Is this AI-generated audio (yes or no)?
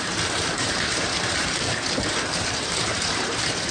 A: yes